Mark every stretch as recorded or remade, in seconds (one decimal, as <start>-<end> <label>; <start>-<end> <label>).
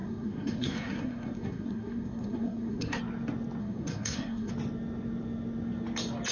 0.0-3.0 remade; 3.0-3.6 recorded; 3.6-4.5 remade; 4.5-6.3 recorded